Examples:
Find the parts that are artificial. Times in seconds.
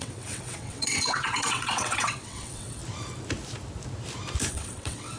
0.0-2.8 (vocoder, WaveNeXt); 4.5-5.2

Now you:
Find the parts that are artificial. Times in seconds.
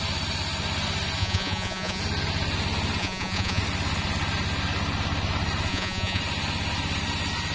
1.2-2.0 (vocoder, Vocos); 3.0-3.6; 5.7-6.2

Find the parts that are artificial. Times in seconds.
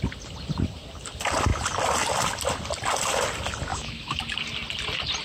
3.7-4.2 (autoencoder, DAC-VAE)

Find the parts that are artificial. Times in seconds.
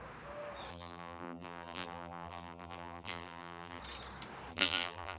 0.7-3.8 (vocoder, BigVGAN v2); 4.5-5.2